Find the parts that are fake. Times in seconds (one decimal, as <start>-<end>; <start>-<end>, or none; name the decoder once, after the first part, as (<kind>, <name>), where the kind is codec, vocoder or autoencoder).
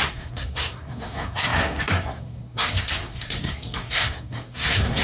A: 0.0-5.0 (codec, SNAC)